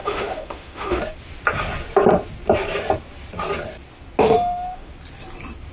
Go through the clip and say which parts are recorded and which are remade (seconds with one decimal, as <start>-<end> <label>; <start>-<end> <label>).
0.0-1.0 remade; 1.0-4.2 recorded; 4.2-4.9 remade; 4.9-5.7 recorded